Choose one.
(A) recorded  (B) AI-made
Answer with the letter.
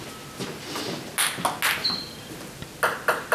A